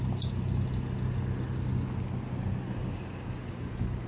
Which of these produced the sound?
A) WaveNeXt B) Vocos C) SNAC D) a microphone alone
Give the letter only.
D